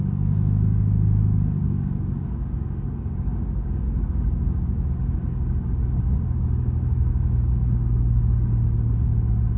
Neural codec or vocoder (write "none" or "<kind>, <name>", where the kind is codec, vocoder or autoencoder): codec, DAC